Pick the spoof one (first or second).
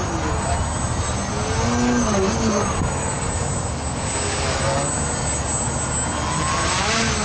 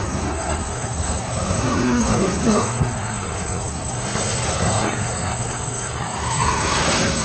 second